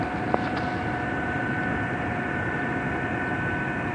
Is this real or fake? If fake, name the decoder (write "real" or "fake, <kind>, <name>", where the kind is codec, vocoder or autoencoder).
real